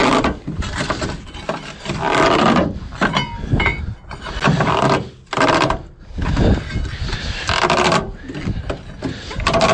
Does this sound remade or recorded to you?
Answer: recorded